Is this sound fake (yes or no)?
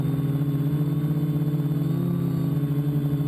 no